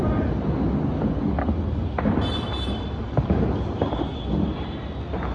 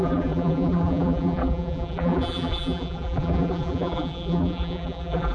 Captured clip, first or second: first